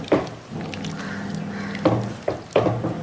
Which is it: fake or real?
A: real